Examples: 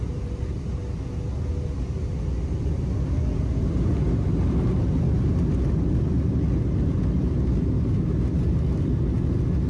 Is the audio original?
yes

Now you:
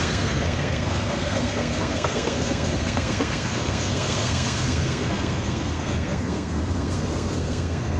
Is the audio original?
no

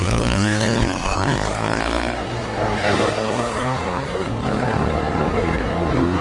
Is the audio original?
no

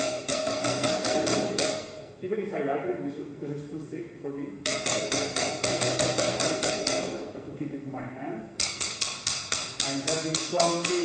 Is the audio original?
no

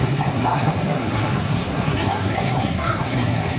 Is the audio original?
no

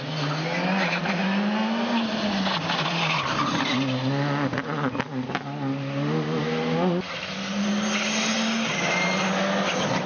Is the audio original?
yes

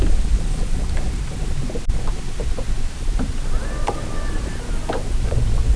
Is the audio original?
yes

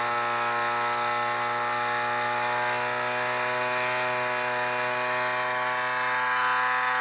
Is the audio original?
yes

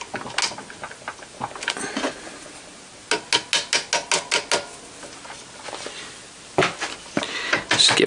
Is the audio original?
yes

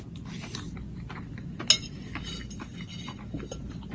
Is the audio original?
yes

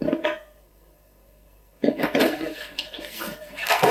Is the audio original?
no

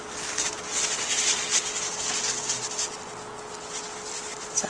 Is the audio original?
yes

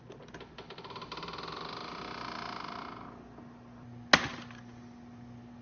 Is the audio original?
yes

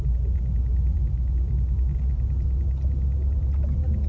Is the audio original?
yes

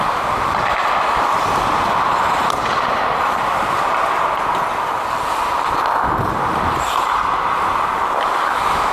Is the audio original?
yes